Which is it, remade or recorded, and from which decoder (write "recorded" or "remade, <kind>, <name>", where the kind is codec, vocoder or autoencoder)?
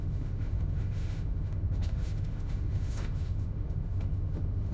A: remade, autoencoder, DAC-VAE